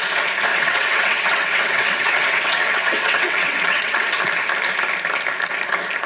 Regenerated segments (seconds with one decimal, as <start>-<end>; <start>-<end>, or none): 0.5-4.2